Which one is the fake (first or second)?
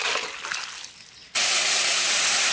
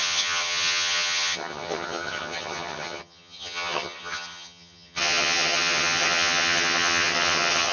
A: second